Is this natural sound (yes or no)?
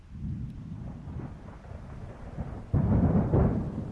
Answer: yes